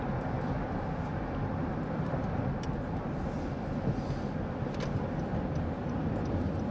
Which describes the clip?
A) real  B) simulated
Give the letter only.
A